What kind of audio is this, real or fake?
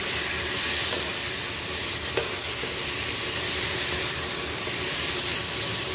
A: fake